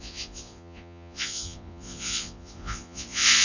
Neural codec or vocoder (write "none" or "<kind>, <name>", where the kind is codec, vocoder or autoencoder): vocoder, Vocos